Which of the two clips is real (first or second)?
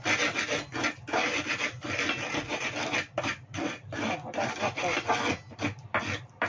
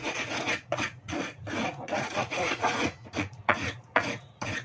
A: first